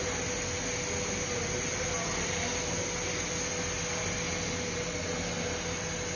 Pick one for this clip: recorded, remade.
recorded